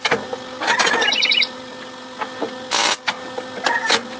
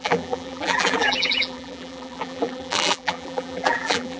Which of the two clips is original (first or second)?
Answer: first